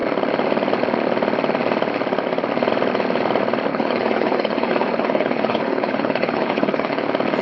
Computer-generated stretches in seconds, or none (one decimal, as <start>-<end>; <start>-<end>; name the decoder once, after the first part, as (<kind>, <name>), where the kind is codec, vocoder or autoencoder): 3.7-7.0 (codec, HILCodec)